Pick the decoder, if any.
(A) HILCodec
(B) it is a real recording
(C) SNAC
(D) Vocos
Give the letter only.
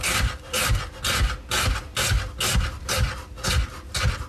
B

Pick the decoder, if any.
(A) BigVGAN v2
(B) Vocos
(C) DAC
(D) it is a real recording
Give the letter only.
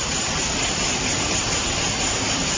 D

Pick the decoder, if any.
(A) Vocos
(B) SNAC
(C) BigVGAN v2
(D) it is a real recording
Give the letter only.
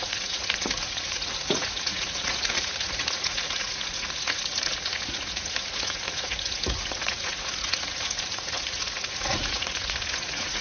A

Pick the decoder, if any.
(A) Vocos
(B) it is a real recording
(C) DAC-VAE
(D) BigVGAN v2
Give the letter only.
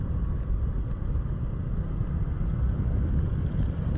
B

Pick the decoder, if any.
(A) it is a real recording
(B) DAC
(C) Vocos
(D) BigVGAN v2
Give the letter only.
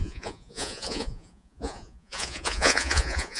C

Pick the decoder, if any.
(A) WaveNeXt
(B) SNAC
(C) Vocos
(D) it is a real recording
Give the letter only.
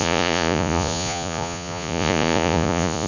C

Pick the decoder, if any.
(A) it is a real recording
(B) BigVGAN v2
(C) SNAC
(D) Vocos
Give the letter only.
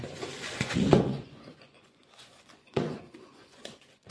D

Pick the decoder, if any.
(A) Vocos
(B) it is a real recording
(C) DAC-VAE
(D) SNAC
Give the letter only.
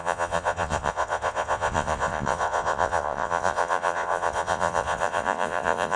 A